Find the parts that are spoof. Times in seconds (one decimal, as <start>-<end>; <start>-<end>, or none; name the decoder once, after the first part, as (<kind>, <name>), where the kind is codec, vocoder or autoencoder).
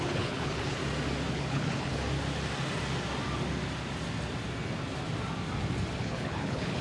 0.0-0.8 (codec, HILCodec); 1.3-1.9; 6.0-6.8